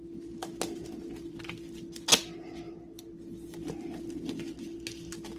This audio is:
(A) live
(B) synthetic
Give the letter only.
A